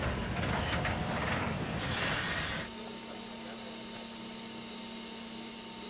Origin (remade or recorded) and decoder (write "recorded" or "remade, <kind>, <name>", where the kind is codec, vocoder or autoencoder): recorded